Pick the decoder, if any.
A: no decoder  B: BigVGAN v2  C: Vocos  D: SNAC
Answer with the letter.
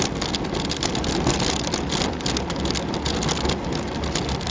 A